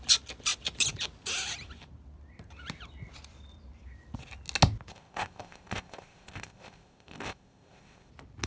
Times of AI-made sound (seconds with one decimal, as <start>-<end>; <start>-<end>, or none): 4.9-8.1